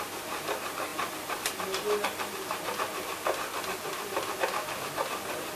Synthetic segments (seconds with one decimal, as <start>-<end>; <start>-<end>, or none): none